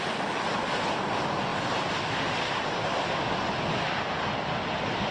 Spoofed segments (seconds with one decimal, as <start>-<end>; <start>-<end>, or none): none